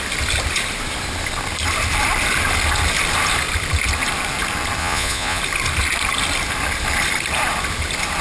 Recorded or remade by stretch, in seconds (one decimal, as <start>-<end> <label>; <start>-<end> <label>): 0.0-4.8 recorded; 4.8-5.4 remade; 5.4-8.2 recorded